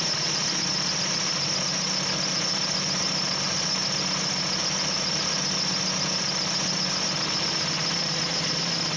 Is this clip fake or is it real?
real